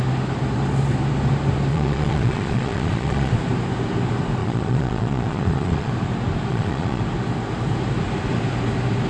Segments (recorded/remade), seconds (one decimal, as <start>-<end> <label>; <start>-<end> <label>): 0.0-1.7 recorded; 1.7-3.3 remade; 3.3-4.4 recorded; 4.4-5.9 remade; 5.9-6.5 recorded; 6.5-7.0 remade; 7.0-9.1 recorded